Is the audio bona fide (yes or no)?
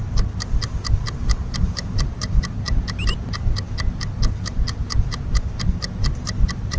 yes